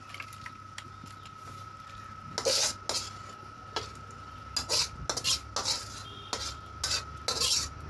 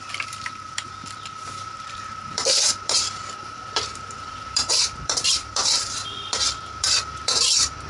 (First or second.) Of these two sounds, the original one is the first